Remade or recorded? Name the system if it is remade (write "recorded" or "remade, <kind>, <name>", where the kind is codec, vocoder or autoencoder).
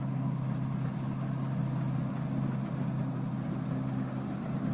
recorded